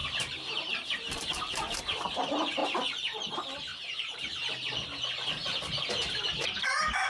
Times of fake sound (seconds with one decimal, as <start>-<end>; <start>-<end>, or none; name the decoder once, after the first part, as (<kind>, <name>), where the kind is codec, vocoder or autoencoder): 0.0-1.8 (vocoder, BigVGAN v2); 3.7-4.5; 5.4-7.1